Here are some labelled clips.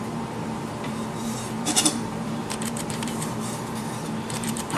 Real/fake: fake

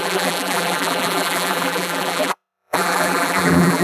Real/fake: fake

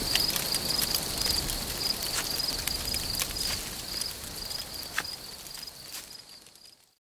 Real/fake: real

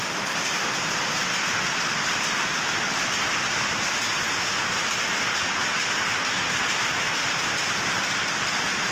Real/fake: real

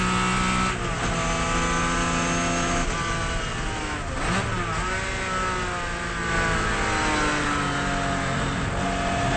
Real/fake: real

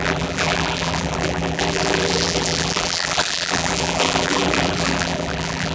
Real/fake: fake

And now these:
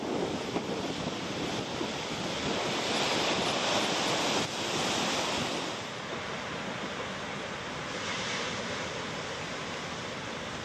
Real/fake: fake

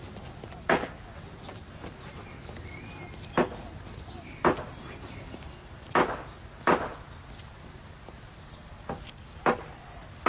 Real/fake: real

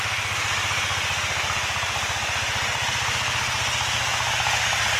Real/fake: real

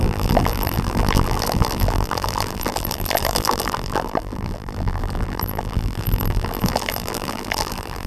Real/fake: fake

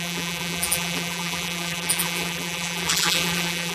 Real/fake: fake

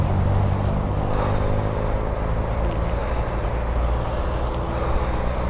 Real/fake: real